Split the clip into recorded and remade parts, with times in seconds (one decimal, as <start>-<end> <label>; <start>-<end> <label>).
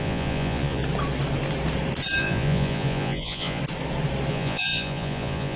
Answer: 0.0-0.8 remade; 0.8-2.2 recorded; 2.2-3.6 remade; 3.6-4.3 recorded; 4.3-5.6 remade